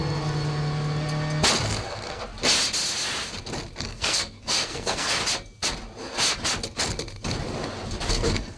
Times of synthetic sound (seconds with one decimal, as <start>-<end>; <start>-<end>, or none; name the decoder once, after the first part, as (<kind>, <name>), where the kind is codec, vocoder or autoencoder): 1.8-2.2 (codec, SNAC); 3.8-5.2; 8.1-8.6